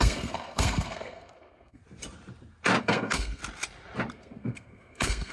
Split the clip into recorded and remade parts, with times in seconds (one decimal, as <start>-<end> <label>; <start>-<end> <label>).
0.0-1.8 remade; 1.8-2.8 recorded; 2.8-3.4 remade; 3.4-4.1 recorded; 4.1-5.3 remade

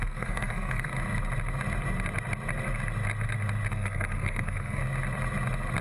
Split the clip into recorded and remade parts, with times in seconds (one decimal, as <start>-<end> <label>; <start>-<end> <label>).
0.0-0.9 remade; 0.9-3.7 recorded; 3.7-4.8 remade; 4.8-5.8 recorded

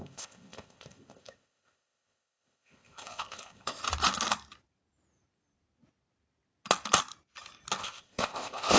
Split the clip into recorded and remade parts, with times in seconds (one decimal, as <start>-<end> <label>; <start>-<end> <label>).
0.0-3.8 remade; 3.8-7.8 recorded; 7.8-8.8 remade

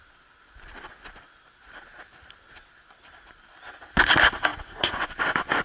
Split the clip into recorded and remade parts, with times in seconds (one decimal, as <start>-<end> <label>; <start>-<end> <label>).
0.0-4.5 recorded; 4.5-5.1 remade; 5.1-5.6 recorded

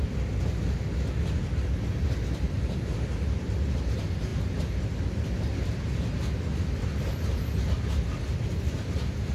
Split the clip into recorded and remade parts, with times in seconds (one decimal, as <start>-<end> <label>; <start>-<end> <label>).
0.0-9.3 recorded

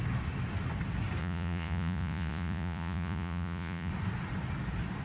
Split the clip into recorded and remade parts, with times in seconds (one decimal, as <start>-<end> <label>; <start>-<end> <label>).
0.0-1.2 recorded; 1.2-3.9 remade; 3.9-5.0 recorded

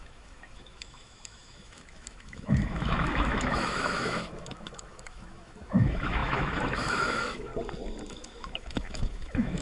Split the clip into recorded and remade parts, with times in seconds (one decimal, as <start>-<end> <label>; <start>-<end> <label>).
0.0-7.5 remade; 7.5-8.1 recorded; 8.1-9.6 remade

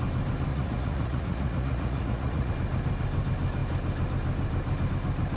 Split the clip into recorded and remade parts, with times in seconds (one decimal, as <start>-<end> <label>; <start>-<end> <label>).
0.0-0.5 recorded; 0.5-2.5 remade; 2.5-5.4 recorded